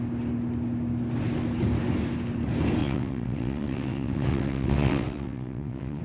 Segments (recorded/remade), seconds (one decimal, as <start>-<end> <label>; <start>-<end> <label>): 0.0-2.8 recorded; 2.8-6.0 remade